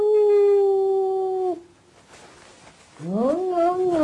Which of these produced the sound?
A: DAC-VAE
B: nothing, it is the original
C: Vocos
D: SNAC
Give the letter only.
B